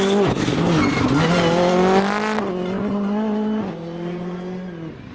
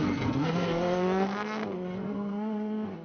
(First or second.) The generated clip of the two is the second